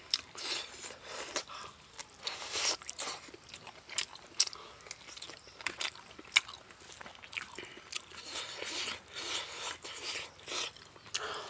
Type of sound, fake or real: real